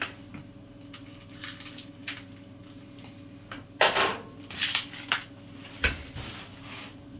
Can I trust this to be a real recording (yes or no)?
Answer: yes